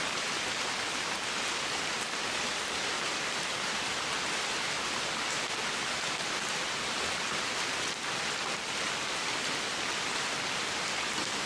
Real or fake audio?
real